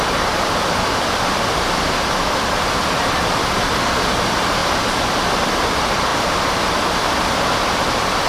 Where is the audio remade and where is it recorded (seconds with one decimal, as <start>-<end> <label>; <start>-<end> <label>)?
0.0-0.6 recorded; 0.6-3.8 remade; 3.8-4.6 recorded; 4.6-5.2 remade; 5.2-6.1 recorded; 6.1-7.4 remade; 7.4-8.3 recorded